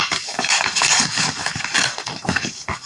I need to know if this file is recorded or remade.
remade